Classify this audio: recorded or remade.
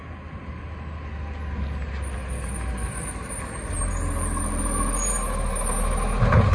recorded